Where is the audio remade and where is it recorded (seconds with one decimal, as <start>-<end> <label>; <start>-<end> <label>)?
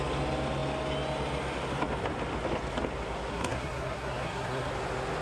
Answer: 0.0-3.3 recorded; 3.3-4.7 remade; 4.7-5.2 recorded